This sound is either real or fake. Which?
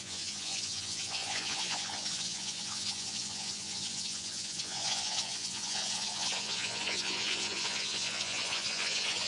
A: fake